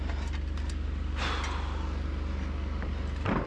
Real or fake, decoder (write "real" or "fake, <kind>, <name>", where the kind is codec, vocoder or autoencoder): real